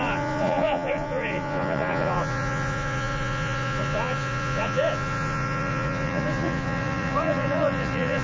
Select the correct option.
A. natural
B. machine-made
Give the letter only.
B